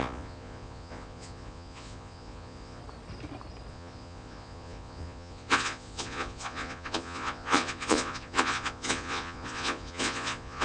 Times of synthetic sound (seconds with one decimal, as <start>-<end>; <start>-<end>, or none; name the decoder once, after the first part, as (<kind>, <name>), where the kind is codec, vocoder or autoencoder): 0.0-2.8 (vocoder, Vocos); 3.7-10.6